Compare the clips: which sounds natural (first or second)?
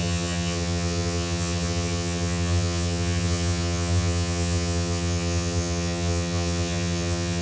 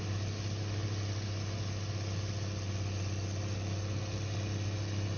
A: second